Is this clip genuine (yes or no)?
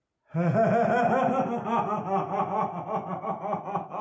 yes